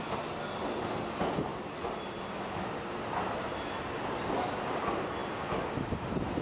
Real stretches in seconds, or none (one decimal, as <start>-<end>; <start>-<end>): 0.0-6.4